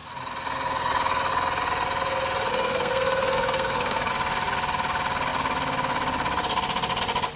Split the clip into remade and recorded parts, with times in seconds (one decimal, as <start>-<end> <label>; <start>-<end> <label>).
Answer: 0.0-2.5 recorded; 2.5-4.1 remade; 4.1-7.4 recorded